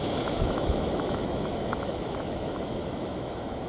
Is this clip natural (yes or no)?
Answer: no